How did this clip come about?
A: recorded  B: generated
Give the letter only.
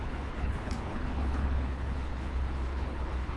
B